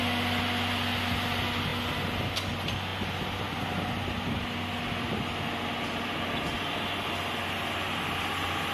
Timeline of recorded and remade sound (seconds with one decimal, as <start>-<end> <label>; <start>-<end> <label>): 0.0-8.7 recorded